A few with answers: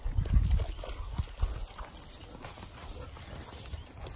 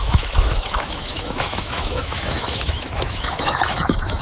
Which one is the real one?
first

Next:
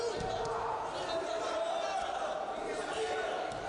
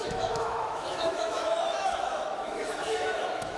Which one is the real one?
first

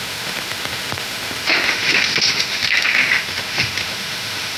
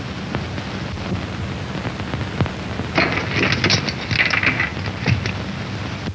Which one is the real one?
second